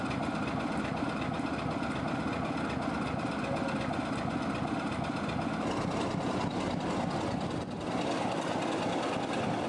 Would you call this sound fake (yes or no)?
no